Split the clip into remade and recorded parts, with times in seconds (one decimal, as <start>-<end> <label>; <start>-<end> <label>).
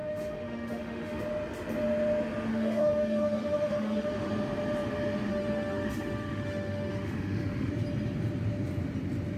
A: 0.0-1.2 remade; 1.2-2.5 recorded; 2.5-4.3 remade; 4.3-5.3 recorded; 5.3-7.7 remade; 7.7-9.4 recorded